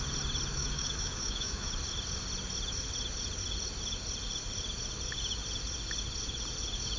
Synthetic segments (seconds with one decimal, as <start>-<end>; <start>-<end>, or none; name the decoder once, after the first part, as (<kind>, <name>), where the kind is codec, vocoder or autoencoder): 0.5-1.7 (autoencoder, DAC-VAE)